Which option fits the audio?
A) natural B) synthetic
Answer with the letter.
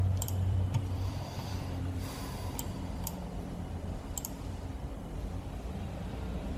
B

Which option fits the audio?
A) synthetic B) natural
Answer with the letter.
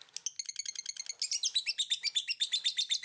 B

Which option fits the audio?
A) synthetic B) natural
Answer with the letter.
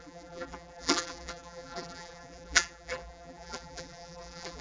A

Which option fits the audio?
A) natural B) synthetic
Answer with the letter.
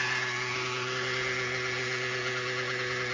A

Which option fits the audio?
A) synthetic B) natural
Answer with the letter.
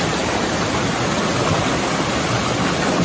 B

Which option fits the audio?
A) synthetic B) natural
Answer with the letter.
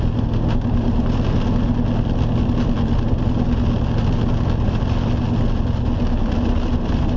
B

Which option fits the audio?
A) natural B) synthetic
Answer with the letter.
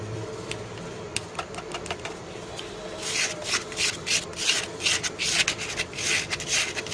A